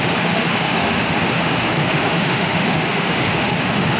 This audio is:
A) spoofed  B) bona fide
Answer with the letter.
A